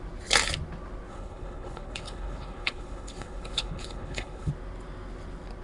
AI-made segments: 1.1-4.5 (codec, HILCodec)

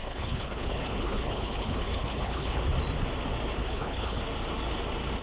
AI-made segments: 0.0-2.6 (codec, HILCodec); 3.6-4.2

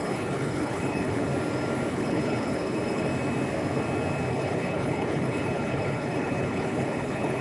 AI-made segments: 0.0-1.3 (codec, HILCodec); 1.9-3.1; 4.3-7.4

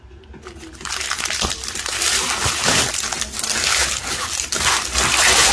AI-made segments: 3.7-4.3 (codec, HILCodec)